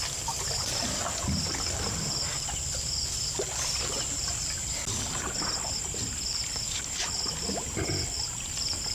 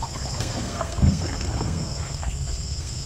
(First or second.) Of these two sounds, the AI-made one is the second